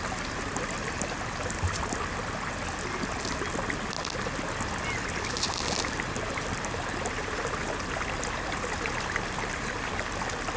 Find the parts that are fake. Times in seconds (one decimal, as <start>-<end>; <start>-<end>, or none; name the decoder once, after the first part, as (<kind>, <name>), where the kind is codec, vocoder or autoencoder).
7.6-10.0 (vocoder, BigVGAN v2)